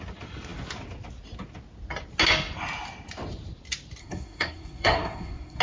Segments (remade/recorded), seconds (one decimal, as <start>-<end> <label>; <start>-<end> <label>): 0.0-4.0 recorded; 4.0-5.6 remade